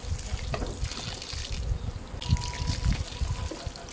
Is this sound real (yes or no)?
yes